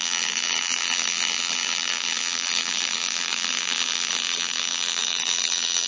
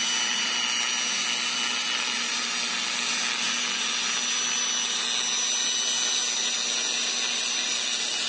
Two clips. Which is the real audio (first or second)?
second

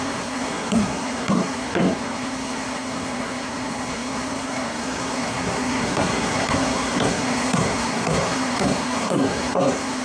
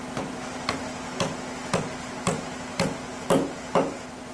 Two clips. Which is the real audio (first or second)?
second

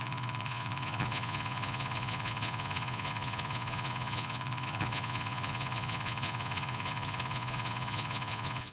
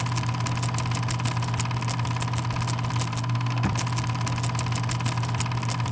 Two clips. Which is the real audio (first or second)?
second